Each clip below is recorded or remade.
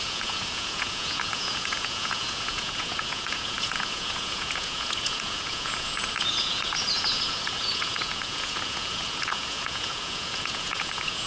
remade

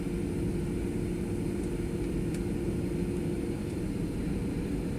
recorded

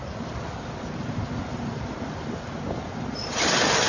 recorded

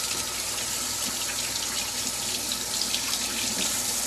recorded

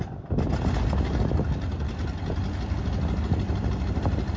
recorded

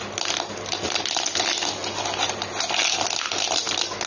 recorded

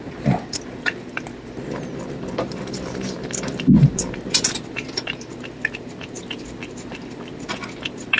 recorded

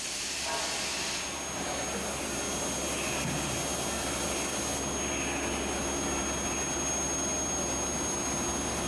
recorded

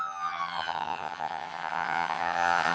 remade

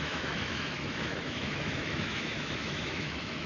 remade